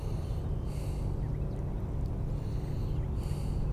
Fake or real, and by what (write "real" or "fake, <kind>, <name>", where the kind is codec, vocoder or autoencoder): real